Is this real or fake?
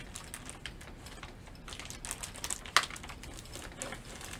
real